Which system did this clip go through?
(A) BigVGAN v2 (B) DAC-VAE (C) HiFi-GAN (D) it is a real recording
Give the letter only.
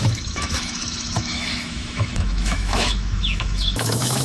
B